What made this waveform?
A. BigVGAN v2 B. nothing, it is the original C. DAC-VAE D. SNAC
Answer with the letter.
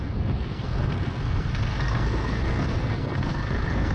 D